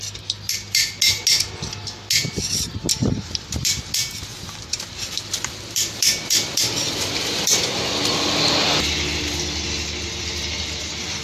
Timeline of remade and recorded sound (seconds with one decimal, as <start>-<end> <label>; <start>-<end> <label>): 0.0-3.0 recorded; 3.0-3.8 remade; 3.8-4.3 recorded; 4.3-6.8 remade; 6.8-11.2 recorded